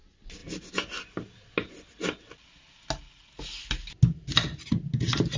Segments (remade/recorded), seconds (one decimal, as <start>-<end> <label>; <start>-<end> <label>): 0.0-5.4 recorded